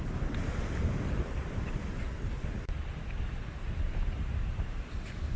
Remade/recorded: recorded